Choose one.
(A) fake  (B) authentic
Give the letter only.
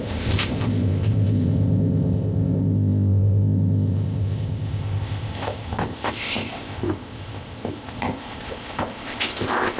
A